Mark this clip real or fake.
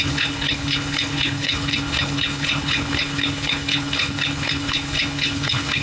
fake